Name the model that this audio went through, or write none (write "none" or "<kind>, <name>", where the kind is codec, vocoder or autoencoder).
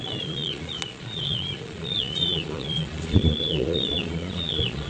vocoder, Vocos